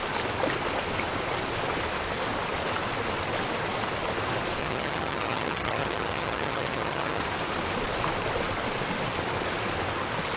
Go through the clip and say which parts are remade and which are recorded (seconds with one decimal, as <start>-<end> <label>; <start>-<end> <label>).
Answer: 0.0-4.6 recorded; 4.6-7.2 remade; 7.2-10.4 recorded